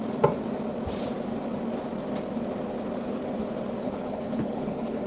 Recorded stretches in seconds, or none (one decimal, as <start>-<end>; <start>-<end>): 0.0-3.8